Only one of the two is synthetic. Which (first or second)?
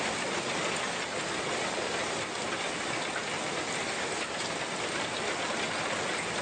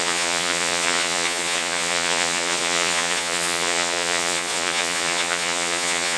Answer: second